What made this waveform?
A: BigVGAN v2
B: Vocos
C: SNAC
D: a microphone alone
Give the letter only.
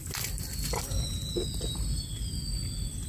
D